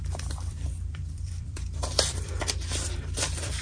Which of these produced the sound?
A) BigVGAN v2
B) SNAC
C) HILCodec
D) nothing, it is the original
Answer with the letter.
A